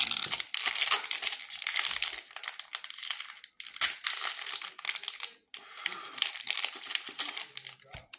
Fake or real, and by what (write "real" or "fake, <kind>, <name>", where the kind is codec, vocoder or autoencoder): real